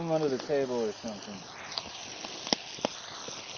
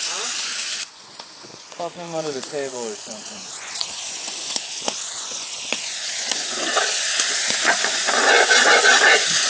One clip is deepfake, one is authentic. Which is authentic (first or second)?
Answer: first